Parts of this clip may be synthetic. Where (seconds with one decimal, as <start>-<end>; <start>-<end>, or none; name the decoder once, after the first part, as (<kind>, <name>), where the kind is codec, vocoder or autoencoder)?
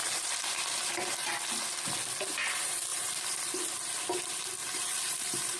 0.0-1.3 (vocoder, BigVGAN v2); 2.9-3.4; 4.6-5.6